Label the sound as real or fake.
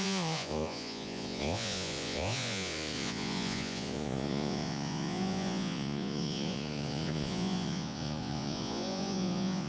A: fake